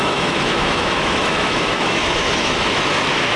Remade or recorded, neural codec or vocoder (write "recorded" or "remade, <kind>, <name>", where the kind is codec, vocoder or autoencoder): remade, autoencoder, DAC-VAE